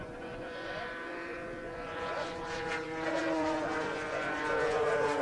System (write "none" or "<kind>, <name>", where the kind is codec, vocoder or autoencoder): vocoder, Vocos